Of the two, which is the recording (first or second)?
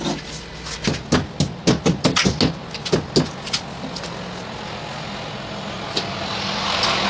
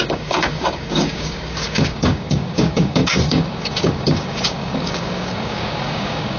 first